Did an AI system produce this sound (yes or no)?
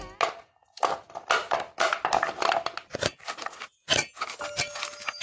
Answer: no